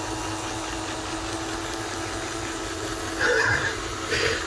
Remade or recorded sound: recorded